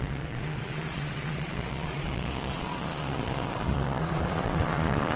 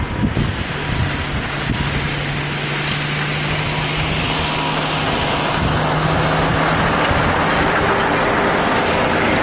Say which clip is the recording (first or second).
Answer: second